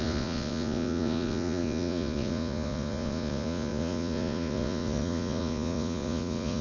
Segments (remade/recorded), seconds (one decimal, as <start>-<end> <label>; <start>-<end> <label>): 0.0-6.6 remade